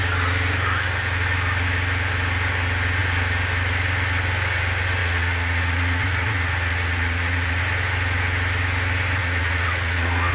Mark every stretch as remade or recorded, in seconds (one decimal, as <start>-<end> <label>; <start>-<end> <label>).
0.0-5.0 recorded; 5.0-7.6 remade; 7.6-9.2 recorded; 9.2-10.3 remade